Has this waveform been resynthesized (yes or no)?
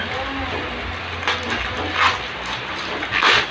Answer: no